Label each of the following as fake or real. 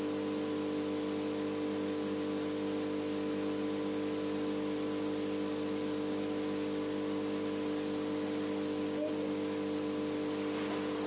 real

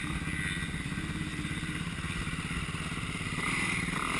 fake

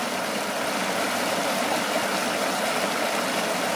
real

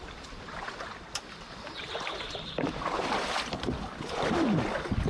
fake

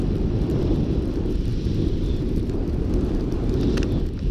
fake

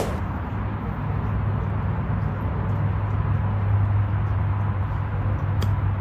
real